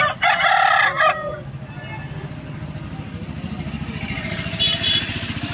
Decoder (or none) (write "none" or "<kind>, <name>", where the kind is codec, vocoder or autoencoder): none